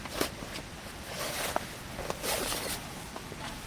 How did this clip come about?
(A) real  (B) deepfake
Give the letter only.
B